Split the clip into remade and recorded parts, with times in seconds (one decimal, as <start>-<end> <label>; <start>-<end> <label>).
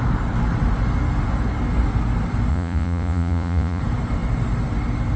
0.0-2.5 recorded; 2.5-3.8 remade; 3.8-5.2 recorded